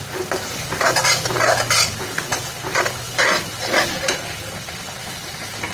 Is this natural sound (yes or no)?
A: yes